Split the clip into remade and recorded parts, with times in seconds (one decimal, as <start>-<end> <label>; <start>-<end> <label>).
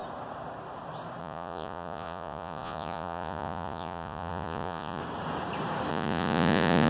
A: 0.0-1.2 recorded; 1.2-5.0 remade; 5.0-5.9 recorded; 5.9-6.9 remade